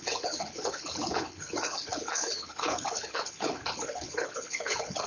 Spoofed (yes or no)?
yes